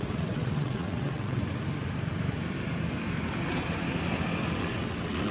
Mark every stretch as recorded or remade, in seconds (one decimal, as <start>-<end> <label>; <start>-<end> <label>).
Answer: 0.0-1.4 remade; 1.4-4.6 recorded; 4.6-5.3 remade